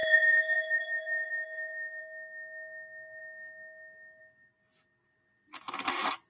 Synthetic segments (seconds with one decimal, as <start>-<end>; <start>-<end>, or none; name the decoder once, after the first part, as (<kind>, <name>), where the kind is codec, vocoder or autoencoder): 0.0-2.0 (codec, SNAC)